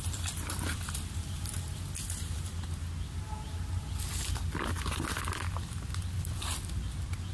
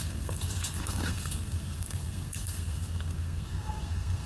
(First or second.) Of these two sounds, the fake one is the second